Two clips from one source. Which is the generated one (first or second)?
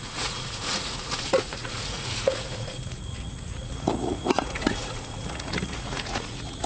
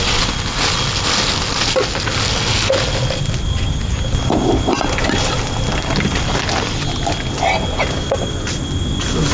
first